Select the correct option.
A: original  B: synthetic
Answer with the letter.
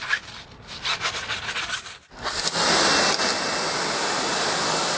A